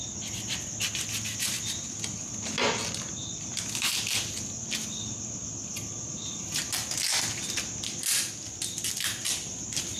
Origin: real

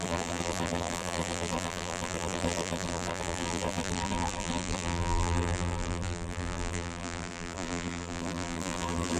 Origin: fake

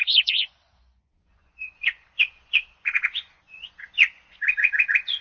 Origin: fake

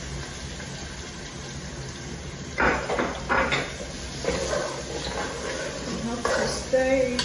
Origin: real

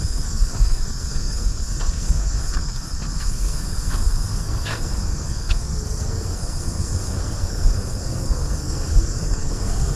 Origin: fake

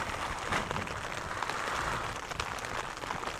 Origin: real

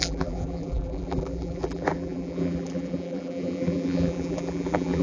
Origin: fake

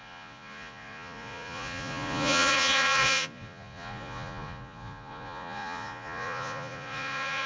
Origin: fake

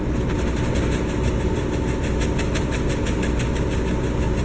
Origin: real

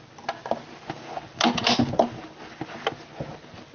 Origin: real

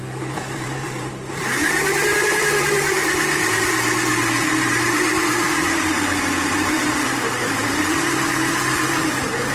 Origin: fake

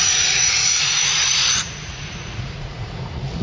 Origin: fake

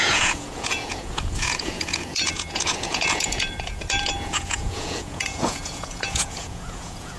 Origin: fake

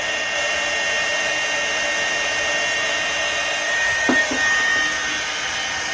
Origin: real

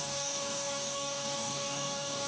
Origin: fake